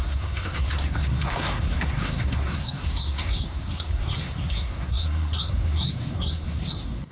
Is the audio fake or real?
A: fake